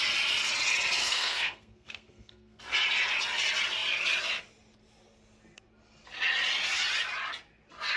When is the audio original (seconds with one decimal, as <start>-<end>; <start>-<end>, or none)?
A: 0.0-1.0; 2.6-8.0